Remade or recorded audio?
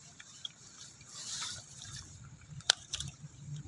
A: remade